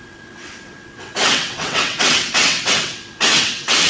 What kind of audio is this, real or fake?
fake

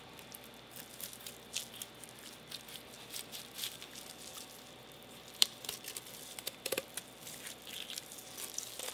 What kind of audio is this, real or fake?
real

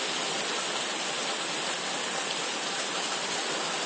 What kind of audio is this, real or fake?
real